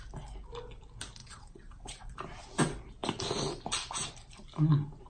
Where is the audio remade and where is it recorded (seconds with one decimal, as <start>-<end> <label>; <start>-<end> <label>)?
0.0-1.2 recorded; 1.2-2.1 remade; 2.1-5.1 recorded